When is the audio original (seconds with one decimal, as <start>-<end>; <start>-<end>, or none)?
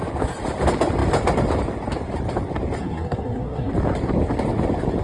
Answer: 0.0-2.8; 3.7-5.0